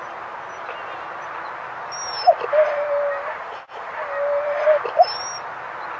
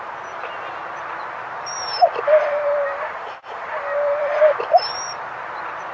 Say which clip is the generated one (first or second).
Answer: second